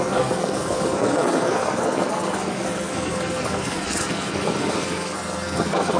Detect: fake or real fake